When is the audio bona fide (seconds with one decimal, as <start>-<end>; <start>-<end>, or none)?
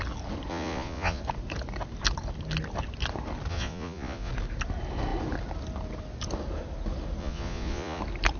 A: 0.0-0.5; 1.2-3.5; 4.3-7.2; 8.0-8.4